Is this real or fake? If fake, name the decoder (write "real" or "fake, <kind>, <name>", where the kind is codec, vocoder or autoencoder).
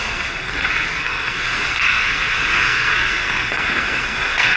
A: fake, codec, SNAC